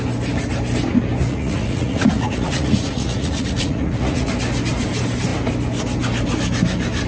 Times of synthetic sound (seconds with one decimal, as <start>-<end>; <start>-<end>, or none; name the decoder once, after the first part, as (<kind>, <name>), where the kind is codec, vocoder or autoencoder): 1.2-4.3 (vocoder, Vocos)